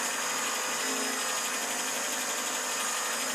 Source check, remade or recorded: recorded